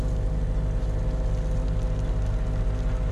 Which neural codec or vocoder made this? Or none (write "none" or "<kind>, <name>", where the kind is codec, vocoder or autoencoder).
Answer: none